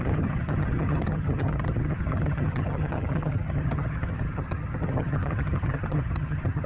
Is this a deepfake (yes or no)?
yes